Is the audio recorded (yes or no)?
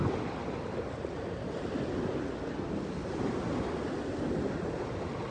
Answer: yes